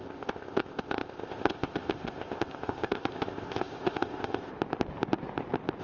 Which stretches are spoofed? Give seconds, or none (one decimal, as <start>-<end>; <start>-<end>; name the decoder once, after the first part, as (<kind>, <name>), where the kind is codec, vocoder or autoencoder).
0.0-4.5 (codec, ZipCodec)